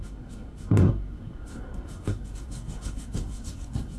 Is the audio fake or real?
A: fake